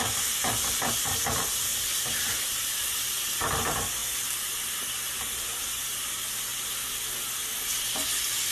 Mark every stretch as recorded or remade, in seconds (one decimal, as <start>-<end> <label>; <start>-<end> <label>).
0.0-1.7 recorded; 1.7-2.6 remade; 2.6-6.5 recorded; 6.5-7.0 remade; 7.0-8.5 recorded